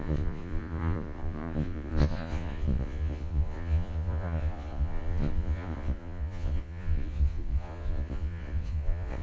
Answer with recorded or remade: remade